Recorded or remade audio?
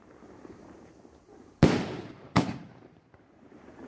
remade